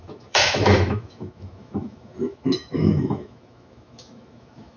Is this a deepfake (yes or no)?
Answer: yes